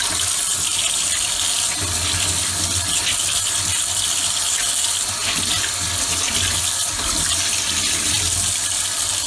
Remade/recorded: recorded